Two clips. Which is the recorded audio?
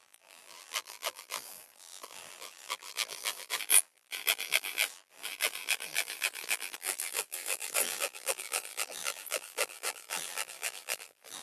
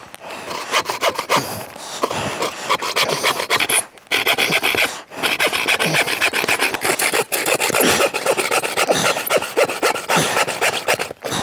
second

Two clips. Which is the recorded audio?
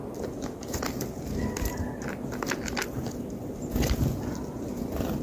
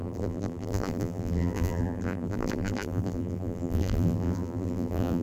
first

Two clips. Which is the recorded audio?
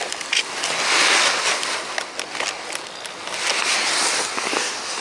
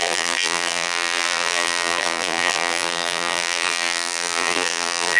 first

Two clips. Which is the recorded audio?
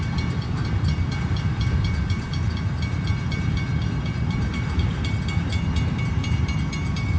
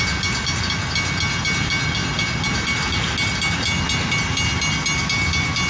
second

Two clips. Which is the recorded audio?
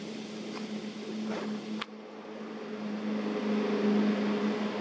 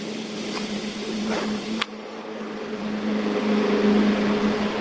first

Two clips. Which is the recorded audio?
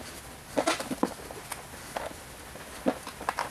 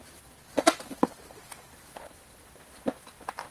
first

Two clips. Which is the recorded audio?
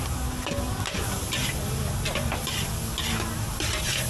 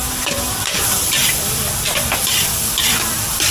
first